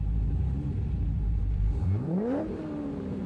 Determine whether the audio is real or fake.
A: fake